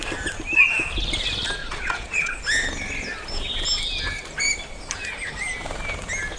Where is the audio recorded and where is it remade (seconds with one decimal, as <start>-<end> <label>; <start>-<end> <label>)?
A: 0.0-1.6 recorded; 1.6-2.4 remade; 2.4-6.4 recorded